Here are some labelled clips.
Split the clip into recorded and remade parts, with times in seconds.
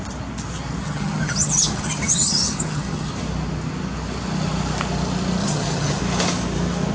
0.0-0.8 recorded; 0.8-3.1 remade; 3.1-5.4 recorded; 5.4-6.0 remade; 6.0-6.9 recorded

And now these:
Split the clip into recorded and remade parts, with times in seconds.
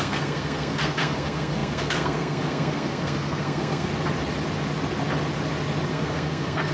0.0-3.9 remade; 3.9-5.9 recorded; 5.9-6.7 remade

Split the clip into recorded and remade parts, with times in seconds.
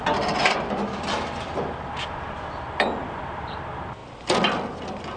0.0-0.4 recorded; 0.4-3.5 remade; 3.5-5.2 recorded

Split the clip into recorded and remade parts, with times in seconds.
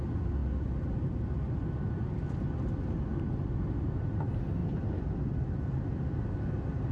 0.0-6.9 recorded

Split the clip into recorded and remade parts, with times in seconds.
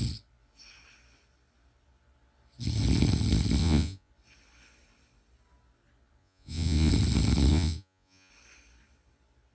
0.0-3.6 recorded; 3.6-4.1 remade; 4.1-6.2 recorded; 6.2-6.9 remade; 6.9-7.5 recorded; 7.5-8.3 remade; 8.3-9.5 recorded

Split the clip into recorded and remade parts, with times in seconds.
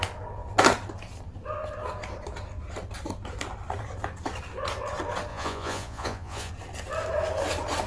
0.0-5.3 recorded; 5.3-6.5 remade; 6.5-7.9 recorded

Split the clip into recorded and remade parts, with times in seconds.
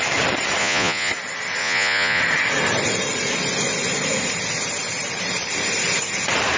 0.0-0.6 recorded; 0.6-1.1 remade; 1.1-1.6 recorded; 1.6-2.2 remade; 2.2-6.6 recorded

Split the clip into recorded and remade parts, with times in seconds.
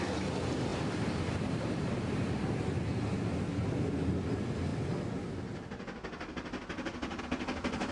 0.0-0.7 recorded; 0.7-2.4 remade; 2.4-7.9 recorded